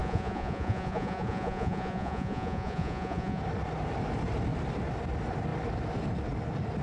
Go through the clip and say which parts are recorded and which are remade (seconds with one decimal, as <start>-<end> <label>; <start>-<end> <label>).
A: 0.0-3.4 remade; 3.4-6.8 recorded